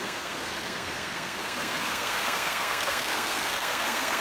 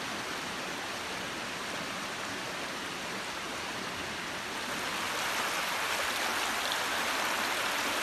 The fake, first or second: first